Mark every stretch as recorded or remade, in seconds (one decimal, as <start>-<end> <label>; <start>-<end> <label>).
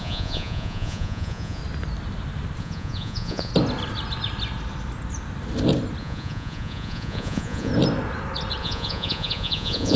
0.0-1.6 remade; 1.6-2.6 recorded; 2.6-3.5 remade; 3.5-6.0 recorded; 6.0-7.7 remade; 7.7-8.6 recorded; 8.6-10.0 remade